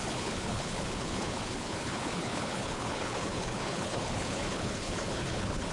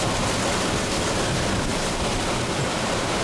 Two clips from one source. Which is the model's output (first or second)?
first